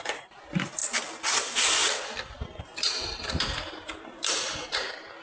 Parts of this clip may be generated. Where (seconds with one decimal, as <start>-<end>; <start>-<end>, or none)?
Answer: 0.0-0.8; 1.4-5.2